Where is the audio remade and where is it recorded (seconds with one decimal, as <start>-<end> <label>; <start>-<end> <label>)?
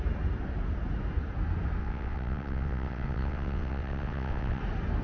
0.0-1.8 recorded; 1.8-4.6 remade; 4.6-5.0 recorded